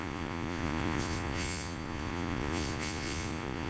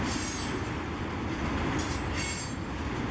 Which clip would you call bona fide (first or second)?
second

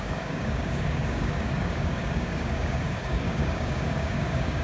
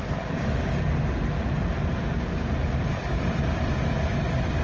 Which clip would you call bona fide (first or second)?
second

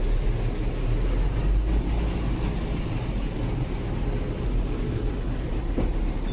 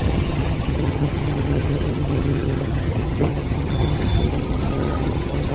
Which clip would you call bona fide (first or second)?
first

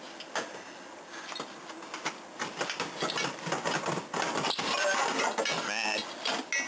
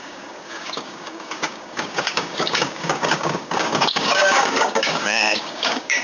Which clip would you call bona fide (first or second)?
first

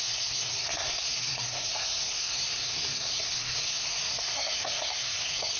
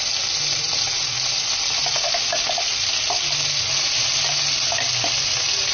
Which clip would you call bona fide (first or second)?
second